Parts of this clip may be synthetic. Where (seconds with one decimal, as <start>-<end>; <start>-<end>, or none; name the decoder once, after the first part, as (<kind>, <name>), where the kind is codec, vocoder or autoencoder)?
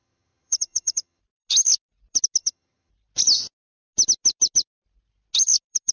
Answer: 0.0-1.2 (vocoder, HiFi-GAN); 2.4-2.9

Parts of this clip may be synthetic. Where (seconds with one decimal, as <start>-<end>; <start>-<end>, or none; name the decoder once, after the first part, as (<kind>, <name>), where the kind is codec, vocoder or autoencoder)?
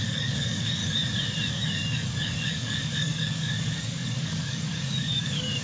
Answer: 0.0-0.8 (codec, DAC); 1.5-5.6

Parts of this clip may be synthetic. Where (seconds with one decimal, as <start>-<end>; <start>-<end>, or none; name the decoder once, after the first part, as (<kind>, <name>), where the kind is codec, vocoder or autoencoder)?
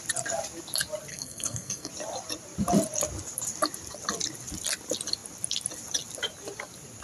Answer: 1.1-1.9 (codec, SNAC)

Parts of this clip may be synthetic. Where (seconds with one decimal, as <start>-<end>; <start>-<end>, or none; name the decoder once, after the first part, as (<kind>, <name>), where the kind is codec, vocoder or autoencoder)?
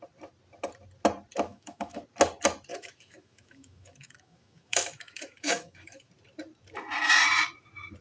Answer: 1.5-2.0 (autoencoder, DAC-VAE); 2.7-6.1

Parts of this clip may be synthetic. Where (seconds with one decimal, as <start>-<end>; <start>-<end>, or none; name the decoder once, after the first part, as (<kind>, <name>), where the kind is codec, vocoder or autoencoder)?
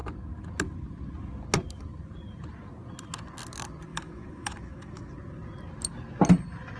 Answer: 3.9-5.1 (autoencoder, DAC-VAE)